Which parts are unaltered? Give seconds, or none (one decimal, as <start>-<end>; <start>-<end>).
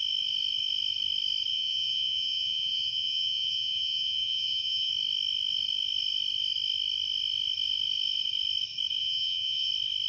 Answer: 0.0-1.5; 4.9-9.0; 9.7-10.1